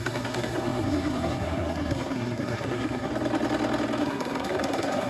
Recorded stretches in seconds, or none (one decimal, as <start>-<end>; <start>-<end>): 3.1-4.0